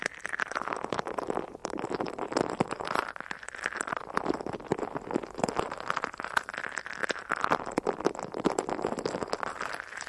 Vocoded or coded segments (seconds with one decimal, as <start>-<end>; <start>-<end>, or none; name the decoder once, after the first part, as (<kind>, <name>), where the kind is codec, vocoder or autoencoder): 1.6-3.1 (vocoder, BigVGAN v2); 7.0-9.7